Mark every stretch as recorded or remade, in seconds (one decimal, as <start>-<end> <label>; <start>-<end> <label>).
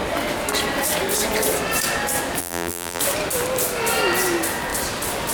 0.0-2.4 recorded; 2.4-3.0 remade; 3.0-5.3 recorded